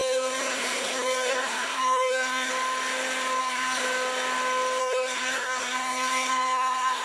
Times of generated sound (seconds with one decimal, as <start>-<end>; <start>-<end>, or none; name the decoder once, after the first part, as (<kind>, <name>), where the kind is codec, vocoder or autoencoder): 0.0-2.5 (codec, SNAC); 3.4-3.8; 4.8-7.0